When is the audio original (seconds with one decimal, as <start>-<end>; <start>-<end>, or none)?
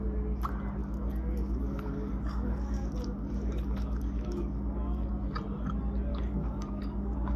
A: 0.0-0.8; 5.1-6.1